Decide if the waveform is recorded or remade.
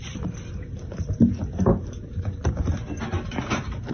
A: remade